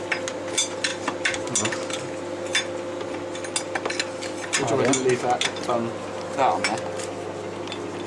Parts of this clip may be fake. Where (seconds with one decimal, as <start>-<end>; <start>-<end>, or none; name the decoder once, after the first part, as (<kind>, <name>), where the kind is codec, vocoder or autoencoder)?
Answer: none